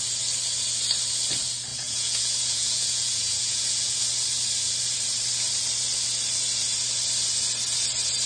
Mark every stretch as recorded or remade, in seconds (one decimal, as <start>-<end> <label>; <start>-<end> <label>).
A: 0.0-1.7 recorded; 1.7-4.0 remade; 4.0-8.3 recorded